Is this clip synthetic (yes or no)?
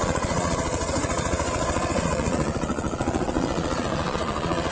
yes